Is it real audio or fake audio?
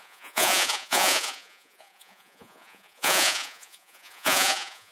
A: fake